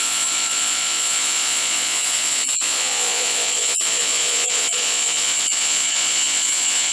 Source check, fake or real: fake